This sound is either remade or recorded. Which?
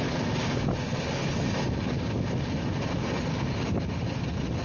recorded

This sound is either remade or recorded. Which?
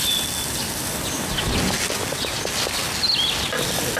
recorded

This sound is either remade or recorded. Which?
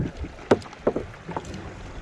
recorded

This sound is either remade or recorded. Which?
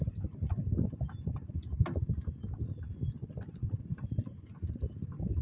recorded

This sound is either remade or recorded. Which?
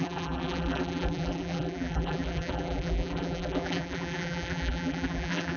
remade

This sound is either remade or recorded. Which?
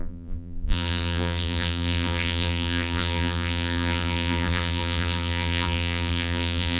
remade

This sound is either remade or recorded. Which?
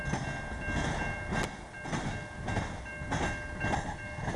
recorded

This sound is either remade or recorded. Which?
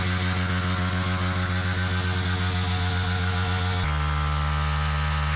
recorded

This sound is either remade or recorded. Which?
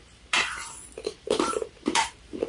remade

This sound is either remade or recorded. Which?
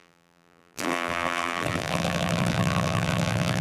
remade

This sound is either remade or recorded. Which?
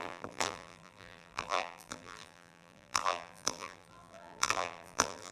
remade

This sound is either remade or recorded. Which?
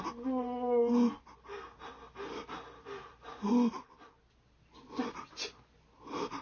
recorded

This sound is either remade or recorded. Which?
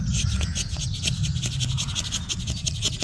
recorded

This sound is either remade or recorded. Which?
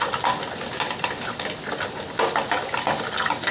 recorded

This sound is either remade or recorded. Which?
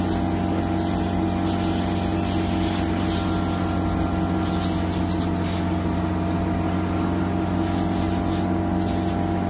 recorded